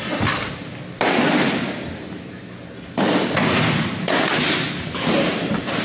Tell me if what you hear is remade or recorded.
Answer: recorded